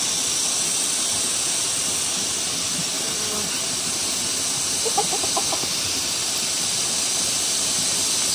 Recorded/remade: recorded